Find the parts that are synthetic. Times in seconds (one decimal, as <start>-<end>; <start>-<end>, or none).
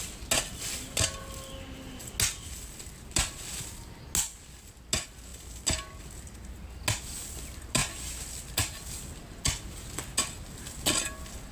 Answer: none